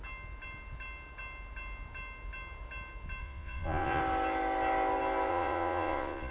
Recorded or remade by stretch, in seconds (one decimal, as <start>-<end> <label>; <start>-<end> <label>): 0.0-3.2 recorded; 3.2-4.0 remade; 4.0-5.3 recorded; 5.3-6.3 remade